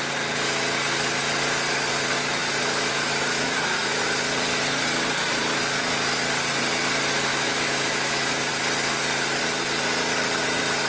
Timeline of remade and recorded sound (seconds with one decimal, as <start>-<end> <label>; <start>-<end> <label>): 0.0-2.4 recorded; 2.4-4.0 remade; 4.0-7.3 recorded; 7.3-8.5 remade; 8.5-10.9 recorded